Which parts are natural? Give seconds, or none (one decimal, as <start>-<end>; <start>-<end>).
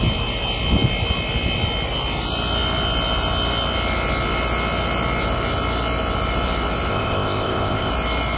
0.0-6.9; 7.9-8.4